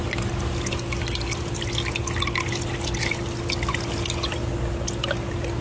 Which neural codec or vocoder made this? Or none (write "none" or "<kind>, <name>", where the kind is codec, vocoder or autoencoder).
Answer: none